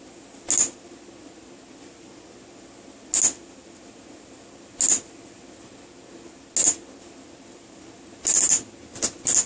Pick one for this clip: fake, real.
real